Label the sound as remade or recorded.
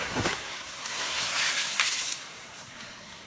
remade